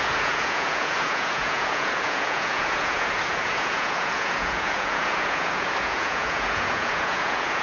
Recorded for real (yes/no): no